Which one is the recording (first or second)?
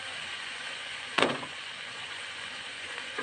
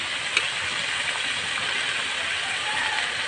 second